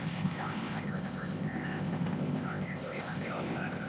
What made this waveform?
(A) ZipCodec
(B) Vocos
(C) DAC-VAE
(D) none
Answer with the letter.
A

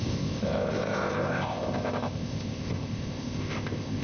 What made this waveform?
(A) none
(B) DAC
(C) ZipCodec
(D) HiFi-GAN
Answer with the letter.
C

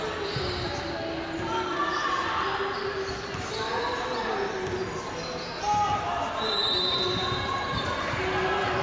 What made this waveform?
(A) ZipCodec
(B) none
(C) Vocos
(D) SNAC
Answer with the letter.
B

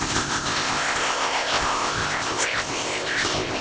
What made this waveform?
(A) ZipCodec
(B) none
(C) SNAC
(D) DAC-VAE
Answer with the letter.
A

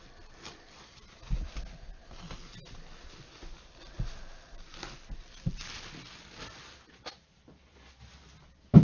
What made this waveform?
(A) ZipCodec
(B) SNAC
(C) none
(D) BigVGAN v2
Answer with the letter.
C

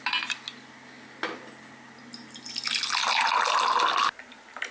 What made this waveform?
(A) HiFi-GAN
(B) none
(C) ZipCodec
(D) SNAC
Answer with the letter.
B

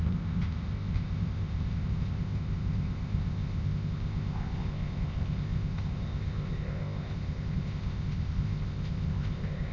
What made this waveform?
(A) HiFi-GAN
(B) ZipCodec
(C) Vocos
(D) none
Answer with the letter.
B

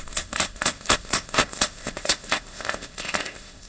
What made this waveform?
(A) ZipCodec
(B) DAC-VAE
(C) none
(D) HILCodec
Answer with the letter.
A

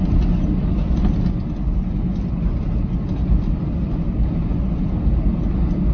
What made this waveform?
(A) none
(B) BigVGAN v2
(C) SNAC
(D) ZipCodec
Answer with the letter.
A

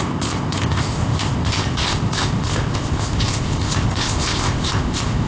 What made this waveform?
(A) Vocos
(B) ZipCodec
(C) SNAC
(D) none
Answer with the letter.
B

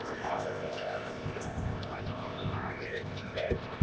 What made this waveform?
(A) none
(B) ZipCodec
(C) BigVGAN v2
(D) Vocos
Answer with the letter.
B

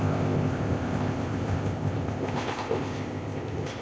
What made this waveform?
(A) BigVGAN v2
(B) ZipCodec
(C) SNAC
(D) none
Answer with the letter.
B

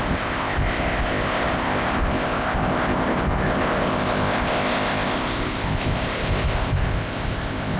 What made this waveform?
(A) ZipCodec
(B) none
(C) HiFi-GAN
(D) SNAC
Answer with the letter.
A